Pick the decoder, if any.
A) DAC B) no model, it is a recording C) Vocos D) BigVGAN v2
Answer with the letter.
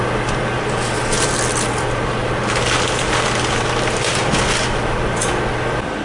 B